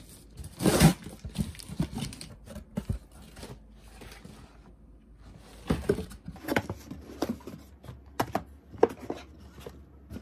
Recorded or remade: recorded